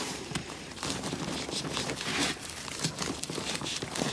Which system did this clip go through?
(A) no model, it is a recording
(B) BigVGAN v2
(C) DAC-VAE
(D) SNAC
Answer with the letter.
B